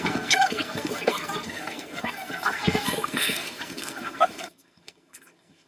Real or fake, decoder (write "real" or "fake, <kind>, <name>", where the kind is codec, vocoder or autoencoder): fake, codec, SNAC